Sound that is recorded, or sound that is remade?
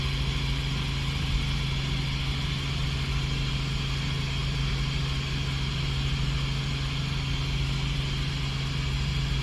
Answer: recorded